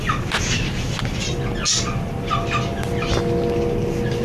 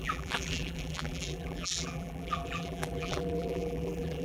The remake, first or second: second